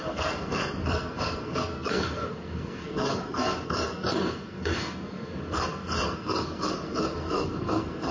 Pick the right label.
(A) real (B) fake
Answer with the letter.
B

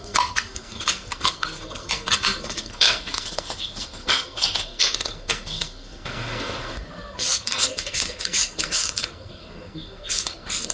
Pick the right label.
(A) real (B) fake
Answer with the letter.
B